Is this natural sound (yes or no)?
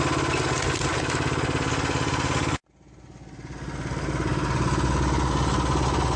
yes